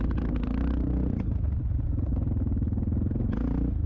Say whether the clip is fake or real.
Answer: real